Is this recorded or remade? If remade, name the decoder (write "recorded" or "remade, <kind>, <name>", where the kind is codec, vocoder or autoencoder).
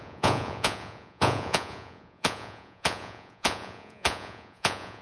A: remade, vocoder, Vocos